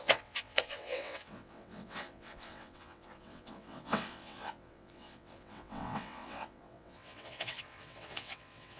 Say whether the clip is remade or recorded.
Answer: remade